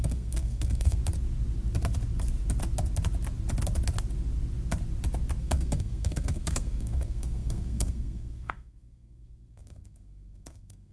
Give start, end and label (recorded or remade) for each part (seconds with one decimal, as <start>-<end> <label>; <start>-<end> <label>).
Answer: 0.0-1.0 remade; 1.0-5.4 recorded; 5.4-10.9 remade